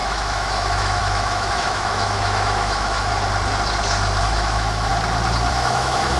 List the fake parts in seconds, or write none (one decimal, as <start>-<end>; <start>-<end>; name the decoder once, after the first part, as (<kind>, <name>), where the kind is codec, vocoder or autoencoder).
0.0-3.1 (autoencoder, DAC-VAE); 4.2-4.9; 5.5-6.2